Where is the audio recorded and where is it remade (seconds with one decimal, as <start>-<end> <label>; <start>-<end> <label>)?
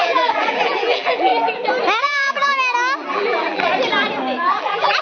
0.0-1.3 remade; 1.3-2.0 recorded; 2.0-2.5 remade; 2.5-3.1 recorded; 3.1-3.7 remade; 3.7-4.6 recorded; 4.6-5.0 remade